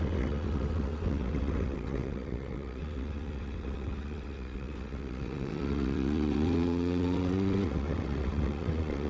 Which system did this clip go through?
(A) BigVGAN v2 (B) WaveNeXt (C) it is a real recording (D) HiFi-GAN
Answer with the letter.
B